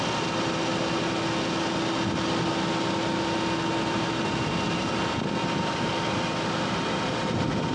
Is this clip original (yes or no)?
yes